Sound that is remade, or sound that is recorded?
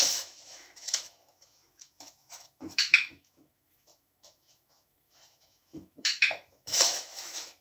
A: remade